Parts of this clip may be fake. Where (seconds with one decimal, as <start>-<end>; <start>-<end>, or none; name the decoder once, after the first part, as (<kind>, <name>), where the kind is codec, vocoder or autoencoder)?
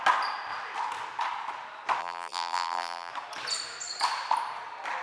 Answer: 2.0-3.1 (vocoder, BigVGAN v2)